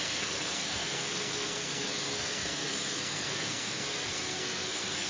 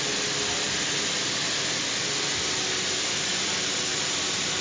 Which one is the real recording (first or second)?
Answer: second